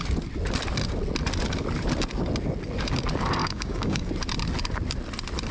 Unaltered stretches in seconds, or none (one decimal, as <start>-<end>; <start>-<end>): 0.0-3.4; 4.1-5.5